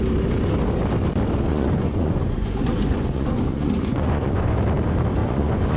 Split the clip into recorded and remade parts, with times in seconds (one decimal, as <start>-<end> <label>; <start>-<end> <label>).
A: 0.0-1.5 recorded; 1.5-4.5 remade; 4.5-5.2 recorded; 5.2-5.8 remade